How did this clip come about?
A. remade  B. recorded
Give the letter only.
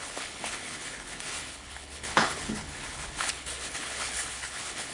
A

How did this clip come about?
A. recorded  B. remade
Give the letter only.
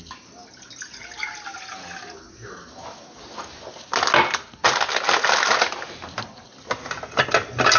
A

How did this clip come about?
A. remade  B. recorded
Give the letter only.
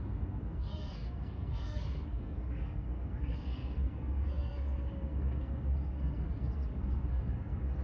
A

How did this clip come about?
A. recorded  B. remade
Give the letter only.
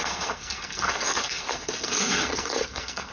B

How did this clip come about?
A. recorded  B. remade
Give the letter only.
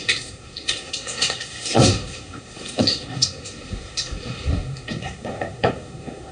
B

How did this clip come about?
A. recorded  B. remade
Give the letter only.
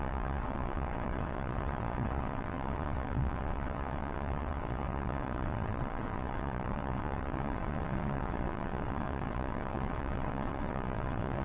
B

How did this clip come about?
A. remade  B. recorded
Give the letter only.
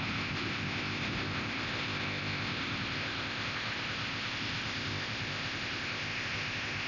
A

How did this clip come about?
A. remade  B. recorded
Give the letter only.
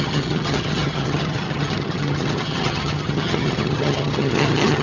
A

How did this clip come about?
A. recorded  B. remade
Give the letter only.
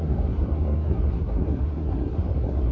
B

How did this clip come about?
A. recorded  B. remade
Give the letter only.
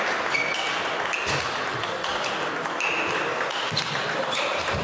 A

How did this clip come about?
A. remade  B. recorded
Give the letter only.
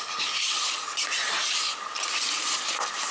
B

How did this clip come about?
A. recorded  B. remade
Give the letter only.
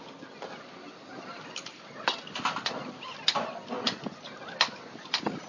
A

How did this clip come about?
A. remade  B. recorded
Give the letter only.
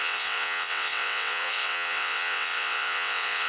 A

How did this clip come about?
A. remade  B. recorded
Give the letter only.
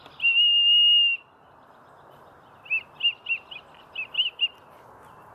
B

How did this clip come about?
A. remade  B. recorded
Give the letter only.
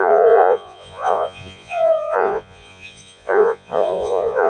A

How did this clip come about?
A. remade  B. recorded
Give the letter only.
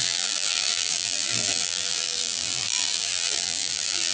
A